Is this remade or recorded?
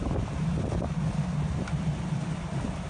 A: recorded